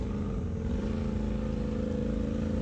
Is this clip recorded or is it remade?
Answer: recorded